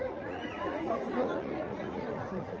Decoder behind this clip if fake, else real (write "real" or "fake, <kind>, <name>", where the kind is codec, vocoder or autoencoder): fake, vocoder, Vocos